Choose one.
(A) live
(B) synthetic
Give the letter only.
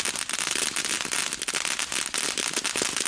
A